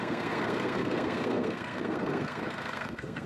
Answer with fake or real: fake